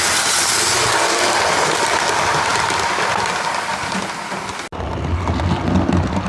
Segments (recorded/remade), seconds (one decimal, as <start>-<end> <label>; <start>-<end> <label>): 0.0-6.3 recorded